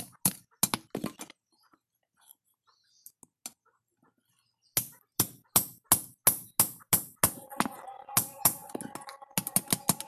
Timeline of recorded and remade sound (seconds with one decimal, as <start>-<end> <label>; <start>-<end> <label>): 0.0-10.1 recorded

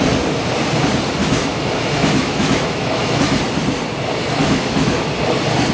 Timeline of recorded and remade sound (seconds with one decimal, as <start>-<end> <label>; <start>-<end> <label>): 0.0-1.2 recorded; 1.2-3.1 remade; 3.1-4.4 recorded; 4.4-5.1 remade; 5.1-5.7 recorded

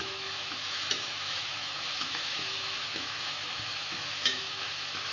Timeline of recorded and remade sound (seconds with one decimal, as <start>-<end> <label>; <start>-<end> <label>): 0.0-5.1 remade

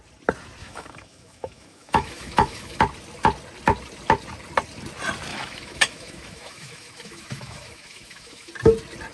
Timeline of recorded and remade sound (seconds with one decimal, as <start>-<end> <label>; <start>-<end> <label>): 0.0-0.6 recorded; 0.6-2.8 remade; 2.8-5.3 recorded; 5.3-8.5 remade; 8.5-9.1 recorded